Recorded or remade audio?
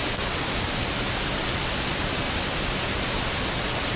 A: recorded